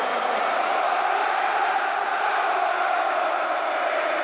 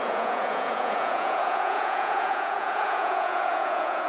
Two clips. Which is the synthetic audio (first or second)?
second